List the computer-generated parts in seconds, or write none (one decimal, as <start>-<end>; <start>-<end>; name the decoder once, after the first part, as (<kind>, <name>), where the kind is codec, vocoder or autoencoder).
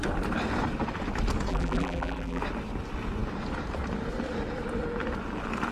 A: 1.5-2.4 (vocoder, BigVGAN v2)